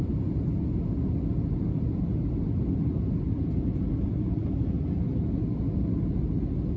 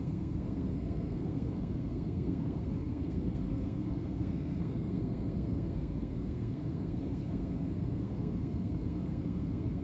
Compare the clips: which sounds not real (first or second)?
second